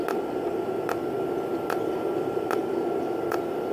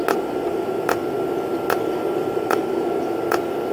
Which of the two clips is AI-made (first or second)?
first